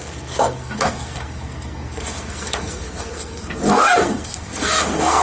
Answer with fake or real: fake